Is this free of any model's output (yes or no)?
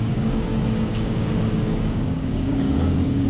no